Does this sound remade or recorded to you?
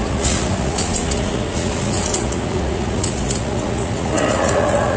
remade